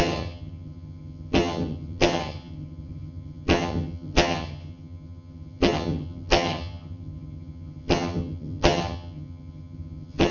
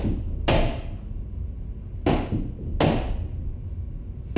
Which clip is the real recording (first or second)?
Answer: second